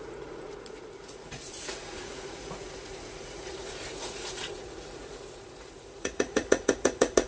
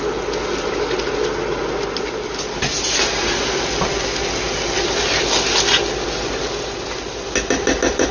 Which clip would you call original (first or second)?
second